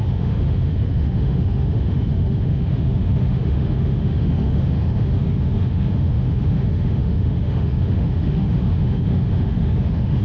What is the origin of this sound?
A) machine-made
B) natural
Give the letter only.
A